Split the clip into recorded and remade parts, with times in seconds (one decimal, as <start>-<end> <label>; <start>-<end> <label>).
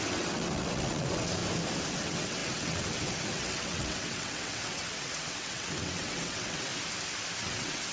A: 0.0-1.4 remade; 1.4-1.9 recorded; 1.9-6.7 remade; 6.7-7.4 recorded; 7.4-7.9 remade